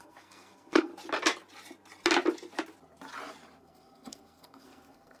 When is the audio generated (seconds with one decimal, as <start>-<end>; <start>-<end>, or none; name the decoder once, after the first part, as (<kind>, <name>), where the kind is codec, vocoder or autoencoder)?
0.0-0.9 (codec, SNAC); 3.6-5.2